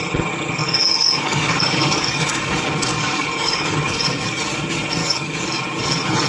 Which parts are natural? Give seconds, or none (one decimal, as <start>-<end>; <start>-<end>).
0.0-0.6; 2.5-2.9; 4.4-5.0; 5.6-6.3